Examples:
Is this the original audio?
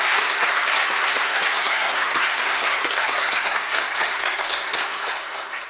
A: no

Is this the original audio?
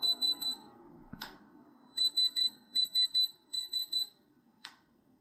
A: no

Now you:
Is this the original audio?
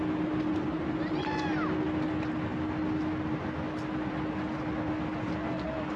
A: yes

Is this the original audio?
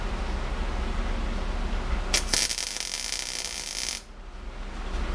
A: yes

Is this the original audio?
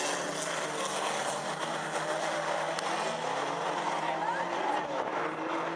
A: yes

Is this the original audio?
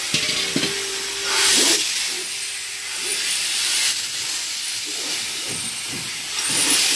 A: yes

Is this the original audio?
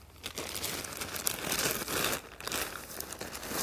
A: yes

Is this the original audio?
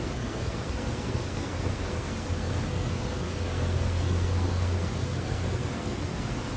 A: no